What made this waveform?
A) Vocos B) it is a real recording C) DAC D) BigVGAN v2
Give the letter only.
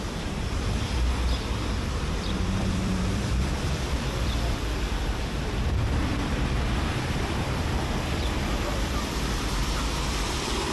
D